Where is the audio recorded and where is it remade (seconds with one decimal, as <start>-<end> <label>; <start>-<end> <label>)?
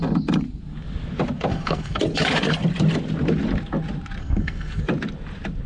0.0-1.5 recorded; 1.5-2.0 remade; 2.0-4.2 recorded; 4.2-4.8 remade; 4.8-5.7 recorded